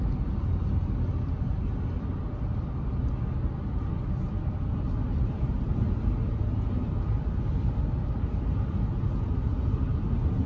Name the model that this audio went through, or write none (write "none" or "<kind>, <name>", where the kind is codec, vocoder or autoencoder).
none